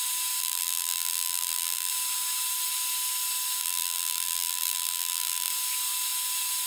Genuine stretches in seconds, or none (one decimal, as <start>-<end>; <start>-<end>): 0.0-0.4; 1.9-3.6; 5.5-6.7